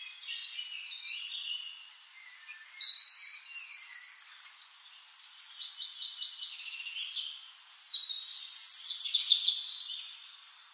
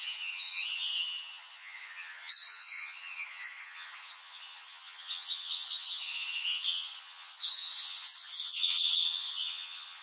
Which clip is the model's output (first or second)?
second